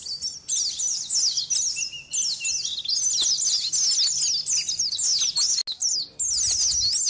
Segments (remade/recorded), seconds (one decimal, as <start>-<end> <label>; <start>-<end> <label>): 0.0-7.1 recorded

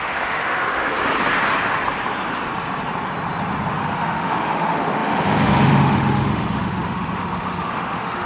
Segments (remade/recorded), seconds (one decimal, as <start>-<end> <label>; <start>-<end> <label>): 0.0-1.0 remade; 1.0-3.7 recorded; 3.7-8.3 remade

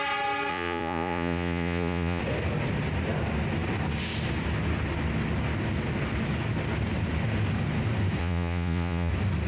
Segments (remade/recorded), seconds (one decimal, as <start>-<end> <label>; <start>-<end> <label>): 0.0-0.5 recorded; 0.5-2.2 remade; 2.2-8.2 recorded; 8.2-9.1 remade; 9.1-9.5 recorded

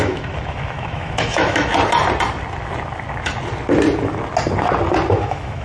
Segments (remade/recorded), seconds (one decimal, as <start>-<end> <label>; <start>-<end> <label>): 0.0-1.7 remade; 1.7-5.1 recorded; 5.1-5.6 remade